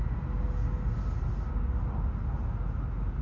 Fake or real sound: real